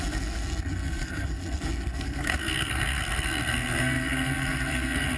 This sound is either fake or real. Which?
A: fake